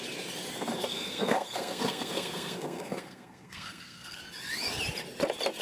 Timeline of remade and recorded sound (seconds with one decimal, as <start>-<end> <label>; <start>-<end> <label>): 0.0-0.8 recorded; 0.8-4.2 remade; 4.2-5.6 recorded